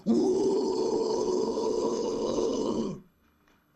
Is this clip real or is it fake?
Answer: fake